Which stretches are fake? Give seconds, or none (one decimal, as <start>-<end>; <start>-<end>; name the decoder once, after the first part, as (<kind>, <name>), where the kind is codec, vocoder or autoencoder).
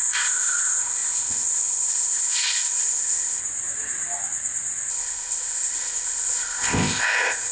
0.0-3.4 (codec, ZipCodec); 4.9-7.5